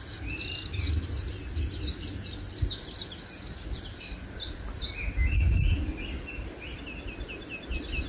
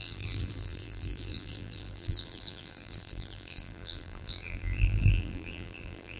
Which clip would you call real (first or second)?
first